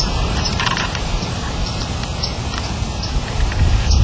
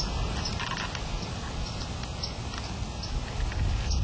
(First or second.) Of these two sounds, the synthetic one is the first